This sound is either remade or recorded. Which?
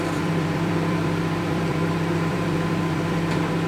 remade